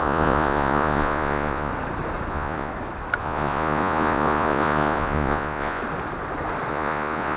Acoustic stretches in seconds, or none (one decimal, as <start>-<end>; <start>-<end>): 1.7-2.3; 2.7-3.2; 5.8-6.7